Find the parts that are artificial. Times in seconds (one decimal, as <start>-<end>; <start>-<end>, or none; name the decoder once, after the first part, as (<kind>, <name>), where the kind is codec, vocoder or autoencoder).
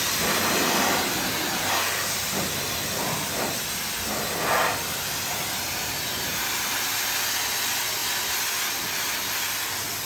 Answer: none